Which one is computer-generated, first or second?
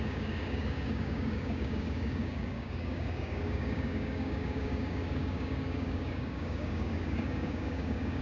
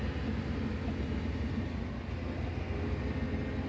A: first